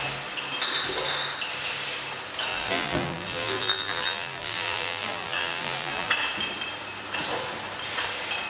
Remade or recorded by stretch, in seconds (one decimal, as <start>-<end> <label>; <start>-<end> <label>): 0.0-2.5 recorded; 2.5-6.1 remade; 6.1-8.5 recorded